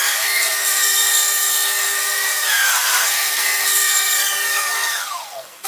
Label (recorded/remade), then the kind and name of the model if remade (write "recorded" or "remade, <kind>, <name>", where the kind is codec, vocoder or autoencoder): remade, codec, SNAC